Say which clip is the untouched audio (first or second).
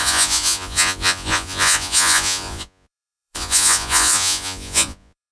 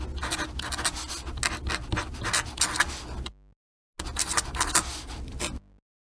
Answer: second